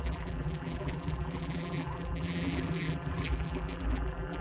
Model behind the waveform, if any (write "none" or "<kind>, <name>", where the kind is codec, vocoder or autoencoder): vocoder, BigVGAN v2